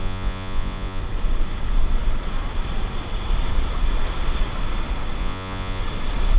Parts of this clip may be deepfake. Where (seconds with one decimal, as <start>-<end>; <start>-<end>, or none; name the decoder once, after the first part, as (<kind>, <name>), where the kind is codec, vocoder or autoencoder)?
0.0-1.0 (vocoder, Vocos); 5.2-5.8